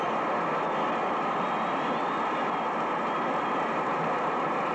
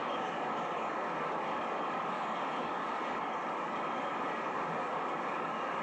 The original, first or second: first